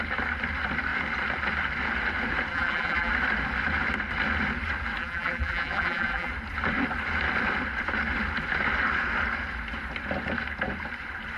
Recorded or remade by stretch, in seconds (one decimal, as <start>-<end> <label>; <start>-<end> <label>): 0.0-2.5 recorded; 2.5-3.1 remade; 3.1-5.0 recorded; 5.0-6.3 remade; 6.3-11.4 recorded